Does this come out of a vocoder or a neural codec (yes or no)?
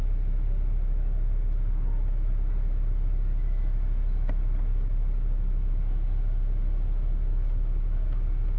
no